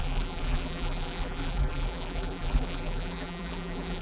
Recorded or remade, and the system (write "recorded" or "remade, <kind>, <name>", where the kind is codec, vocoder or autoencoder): remade, vocoder, BigVGAN v2